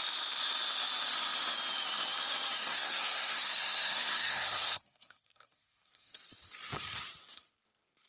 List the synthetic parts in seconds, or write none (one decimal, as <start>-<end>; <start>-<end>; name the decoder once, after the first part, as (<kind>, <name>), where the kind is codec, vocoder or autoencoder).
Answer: 2.7-6.2 (codec, SNAC)